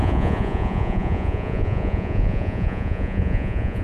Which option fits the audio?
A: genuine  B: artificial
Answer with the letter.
B